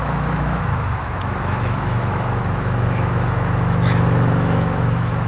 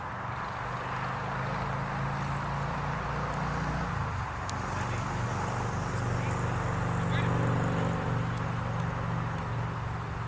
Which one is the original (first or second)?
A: second